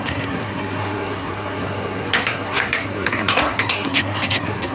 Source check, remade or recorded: remade